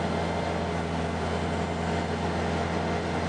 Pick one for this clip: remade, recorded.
recorded